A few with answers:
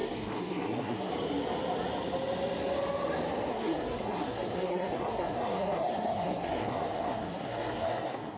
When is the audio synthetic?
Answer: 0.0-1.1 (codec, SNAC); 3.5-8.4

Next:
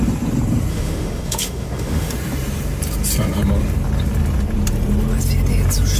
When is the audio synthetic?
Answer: 0.7-2.1 (autoencoder, DAC-VAE)

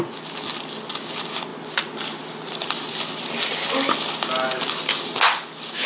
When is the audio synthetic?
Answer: none

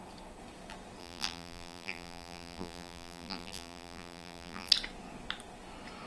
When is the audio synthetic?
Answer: 1.0-4.7 (vocoder, BigVGAN v2)